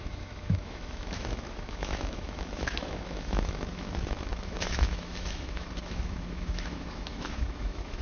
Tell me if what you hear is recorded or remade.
remade